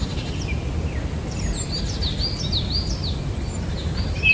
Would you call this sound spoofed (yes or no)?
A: no